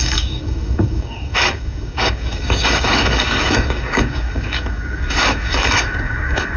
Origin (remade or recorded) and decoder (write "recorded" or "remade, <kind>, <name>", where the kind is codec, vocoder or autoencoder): remade, codec, DAC